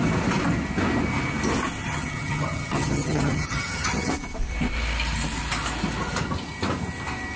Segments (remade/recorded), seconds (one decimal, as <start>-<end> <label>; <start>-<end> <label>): 0.0-1.8 recorded; 1.8-4.1 remade; 4.1-7.4 recorded